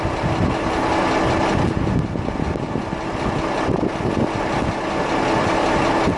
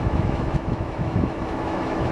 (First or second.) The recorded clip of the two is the first